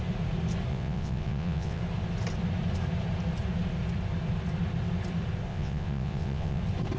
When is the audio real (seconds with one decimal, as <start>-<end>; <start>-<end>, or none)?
0.0-0.7; 1.8-5.5; 6.6-7.0